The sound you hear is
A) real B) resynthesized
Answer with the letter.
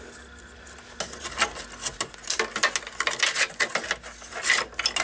A